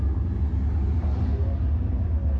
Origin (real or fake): real